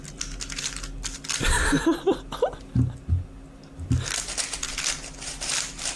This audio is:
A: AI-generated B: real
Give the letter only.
B